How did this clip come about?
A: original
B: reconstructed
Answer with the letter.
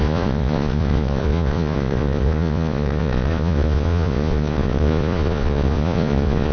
B